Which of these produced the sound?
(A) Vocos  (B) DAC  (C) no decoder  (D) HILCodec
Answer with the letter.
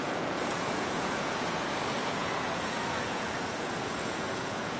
A